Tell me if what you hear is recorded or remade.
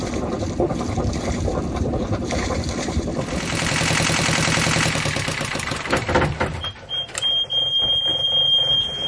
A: remade